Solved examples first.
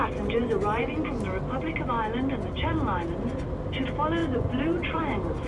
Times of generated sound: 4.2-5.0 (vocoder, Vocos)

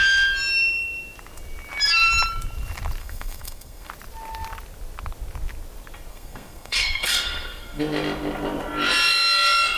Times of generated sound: 3.0-3.9 (codec, SNAC); 6.1-7.8

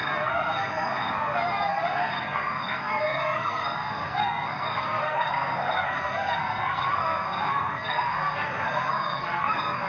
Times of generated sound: 0.0-9.9 (codec, SNAC)

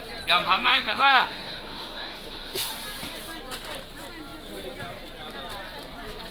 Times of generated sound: 0.7-2.7 (autoencoder, DAC-VAE)